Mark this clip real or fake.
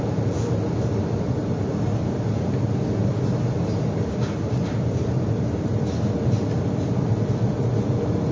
real